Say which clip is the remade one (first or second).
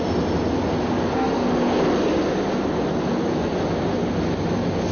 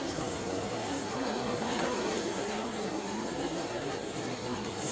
second